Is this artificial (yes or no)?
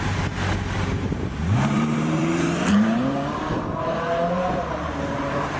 yes